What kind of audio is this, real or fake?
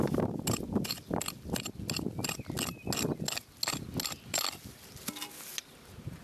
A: real